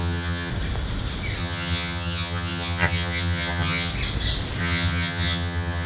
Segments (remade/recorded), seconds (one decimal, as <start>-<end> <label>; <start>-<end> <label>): 0.0-0.5 remade; 0.5-1.4 recorded; 1.4-3.9 remade; 3.9-4.6 recorded; 4.6-5.9 remade